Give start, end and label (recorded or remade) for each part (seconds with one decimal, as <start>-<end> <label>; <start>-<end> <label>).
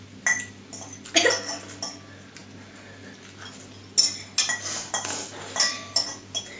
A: 0.0-6.6 recorded